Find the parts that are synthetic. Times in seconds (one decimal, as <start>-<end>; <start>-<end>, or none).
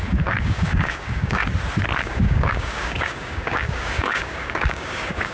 0.0-1.4; 2.0-5.3